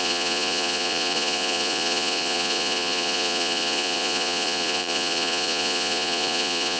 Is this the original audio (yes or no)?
no